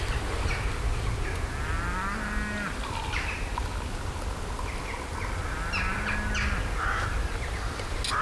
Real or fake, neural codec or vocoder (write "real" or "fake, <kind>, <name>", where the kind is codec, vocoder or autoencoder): real